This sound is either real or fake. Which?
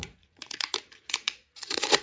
fake